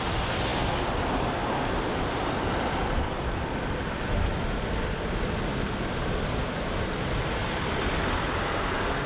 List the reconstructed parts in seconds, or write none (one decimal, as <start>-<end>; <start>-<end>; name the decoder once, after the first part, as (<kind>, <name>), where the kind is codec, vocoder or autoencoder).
none